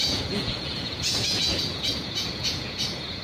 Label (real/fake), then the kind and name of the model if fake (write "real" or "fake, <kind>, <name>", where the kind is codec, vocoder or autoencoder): fake, vocoder, Vocos